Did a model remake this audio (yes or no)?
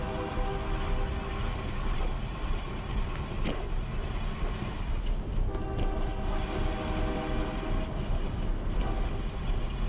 no